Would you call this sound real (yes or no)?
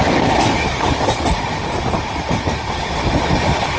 yes